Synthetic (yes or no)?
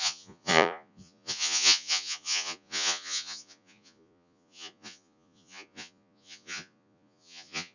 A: yes